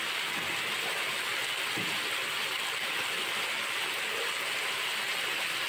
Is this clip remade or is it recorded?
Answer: recorded